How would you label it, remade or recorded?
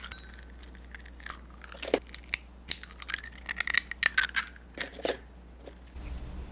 recorded